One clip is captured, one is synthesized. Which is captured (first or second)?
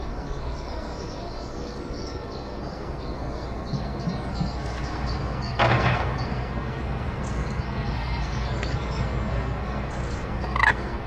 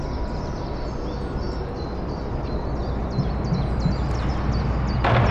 second